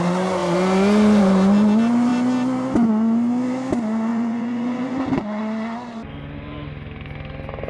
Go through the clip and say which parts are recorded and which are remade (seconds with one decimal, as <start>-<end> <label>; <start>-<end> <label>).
0.0-4.1 recorded; 4.1-5.4 remade; 5.4-7.7 recorded